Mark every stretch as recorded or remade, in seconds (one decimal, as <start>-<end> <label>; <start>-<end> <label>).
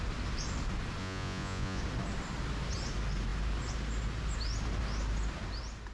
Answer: 0.0-1.0 recorded; 1.0-1.8 remade; 1.8-5.9 recorded